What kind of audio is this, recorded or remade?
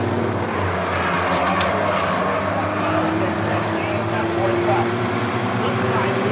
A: recorded